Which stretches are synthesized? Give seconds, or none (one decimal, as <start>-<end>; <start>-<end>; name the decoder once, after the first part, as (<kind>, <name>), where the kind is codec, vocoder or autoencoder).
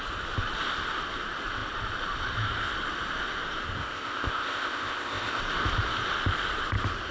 3.8-5.4 (codec, ZipCodec)